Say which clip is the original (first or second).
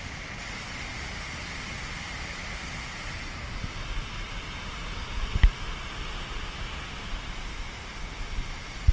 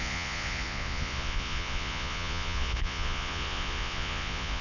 first